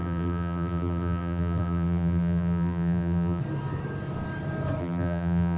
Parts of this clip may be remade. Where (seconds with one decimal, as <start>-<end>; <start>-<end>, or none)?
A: 0.0-3.4; 4.8-5.6